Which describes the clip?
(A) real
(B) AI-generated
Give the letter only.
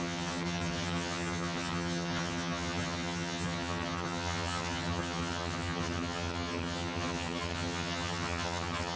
B